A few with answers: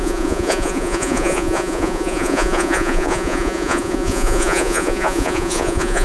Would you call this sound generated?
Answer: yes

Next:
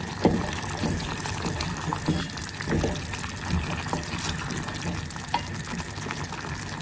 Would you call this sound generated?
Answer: no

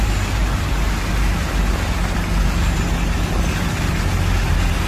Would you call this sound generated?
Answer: no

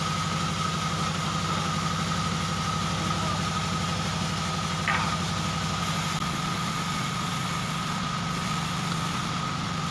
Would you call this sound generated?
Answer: no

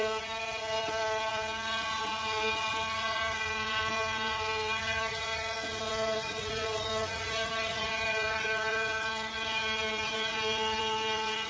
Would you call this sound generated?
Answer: yes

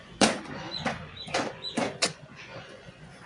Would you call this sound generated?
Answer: yes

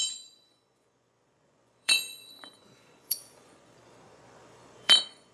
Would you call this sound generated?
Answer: yes